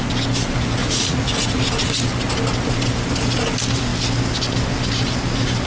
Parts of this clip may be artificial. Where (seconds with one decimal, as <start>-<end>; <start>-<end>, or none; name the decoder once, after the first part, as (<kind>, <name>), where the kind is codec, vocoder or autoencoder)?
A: 0.8-1.6 (vocoder, Vocos)